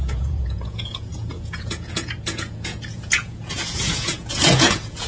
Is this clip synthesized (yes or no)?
yes